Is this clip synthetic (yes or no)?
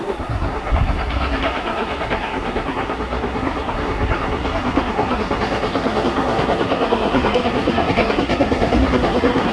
yes